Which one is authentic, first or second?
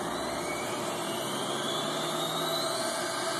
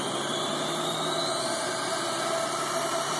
first